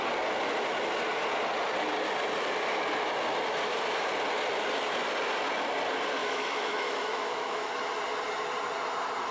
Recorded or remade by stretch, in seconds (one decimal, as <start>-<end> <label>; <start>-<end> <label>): 0.0-6.2 recorded; 6.2-7.7 remade; 7.7-9.3 recorded